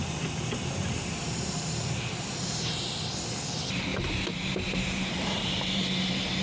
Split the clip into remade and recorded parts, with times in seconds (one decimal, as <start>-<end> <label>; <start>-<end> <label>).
0.0-0.8 recorded; 0.8-3.0 remade; 3.0-3.9 recorded; 3.9-5.8 remade; 5.8-6.4 recorded